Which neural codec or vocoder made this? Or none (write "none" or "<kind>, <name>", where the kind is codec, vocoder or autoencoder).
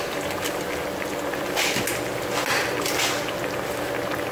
none